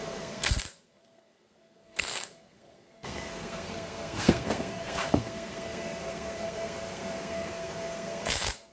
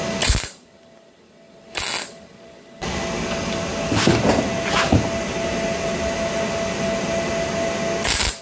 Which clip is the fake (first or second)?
first